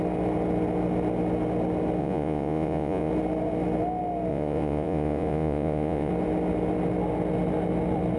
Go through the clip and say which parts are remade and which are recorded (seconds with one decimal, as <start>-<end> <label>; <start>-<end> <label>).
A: 0.0-2.0 recorded; 2.0-3.1 remade; 3.1-4.3 recorded; 4.3-6.1 remade; 6.1-8.2 recorded